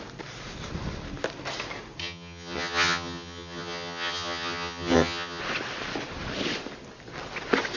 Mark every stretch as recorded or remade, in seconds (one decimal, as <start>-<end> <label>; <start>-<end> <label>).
0.0-2.0 recorded; 2.0-5.4 remade; 5.4-7.8 recorded